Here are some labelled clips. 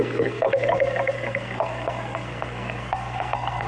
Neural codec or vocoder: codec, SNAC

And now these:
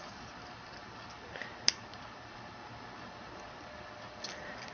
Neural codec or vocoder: none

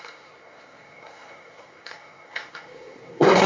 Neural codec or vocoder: codec, SNAC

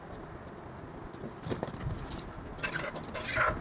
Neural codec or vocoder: none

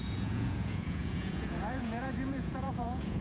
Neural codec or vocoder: vocoder, Vocos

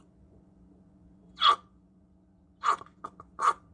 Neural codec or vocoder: vocoder, Vocos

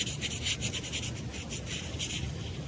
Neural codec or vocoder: none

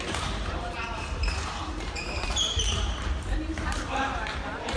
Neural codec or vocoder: vocoder, BigVGAN v2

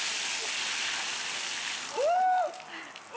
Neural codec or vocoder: none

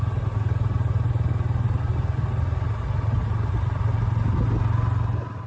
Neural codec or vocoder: none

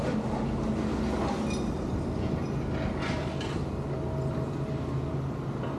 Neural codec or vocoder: none